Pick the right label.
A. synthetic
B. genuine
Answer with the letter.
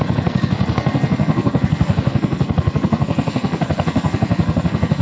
A